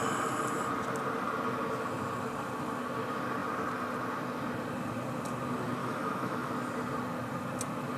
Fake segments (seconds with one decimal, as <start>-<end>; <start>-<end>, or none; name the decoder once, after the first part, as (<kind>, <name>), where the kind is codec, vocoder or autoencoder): 5.8-6.5 (autoencoder, DAC-VAE)